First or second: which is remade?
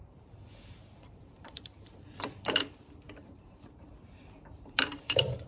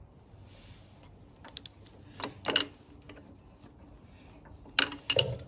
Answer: first